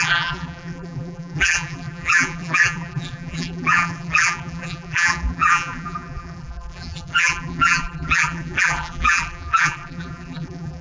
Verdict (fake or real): fake